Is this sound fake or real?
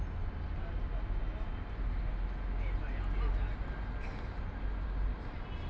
real